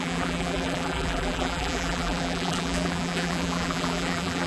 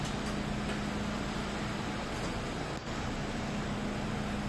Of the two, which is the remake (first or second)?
first